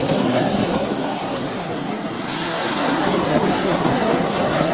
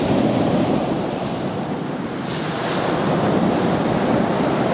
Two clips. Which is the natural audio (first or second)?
second